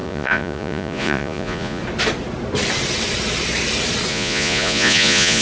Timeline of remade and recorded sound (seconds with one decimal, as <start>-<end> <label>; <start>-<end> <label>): 0.0-1.8 remade; 1.8-4.1 recorded; 4.1-5.4 remade